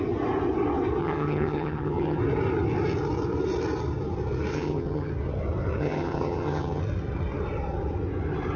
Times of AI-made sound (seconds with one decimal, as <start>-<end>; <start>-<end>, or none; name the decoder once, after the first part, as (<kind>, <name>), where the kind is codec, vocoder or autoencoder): 1.0-2.2 (vocoder, HiFi-GAN); 4.5-5.1; 5.8-6.8